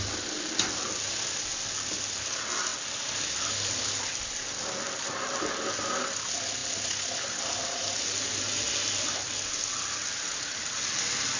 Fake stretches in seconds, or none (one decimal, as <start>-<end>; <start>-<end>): none